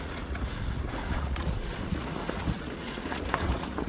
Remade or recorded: remade